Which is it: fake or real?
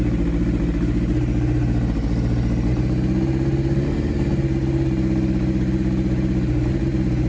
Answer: real